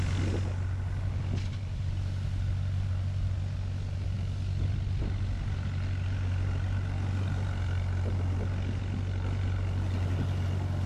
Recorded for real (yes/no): yes